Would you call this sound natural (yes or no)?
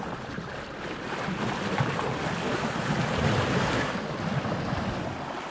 yes